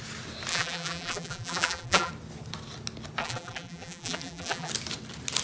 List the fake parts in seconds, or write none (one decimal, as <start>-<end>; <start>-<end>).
0.5-2.1; 3.2-4.7